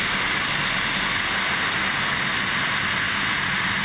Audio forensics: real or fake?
real